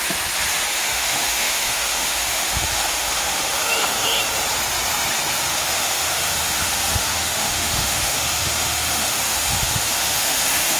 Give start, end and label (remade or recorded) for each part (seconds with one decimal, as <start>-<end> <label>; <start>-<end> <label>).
0.0-0.7 recorded; 0.7-4.2 remade; 4.2-5.5 recorded; 5.5-10.8 remade